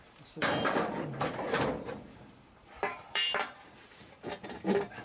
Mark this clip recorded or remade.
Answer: remade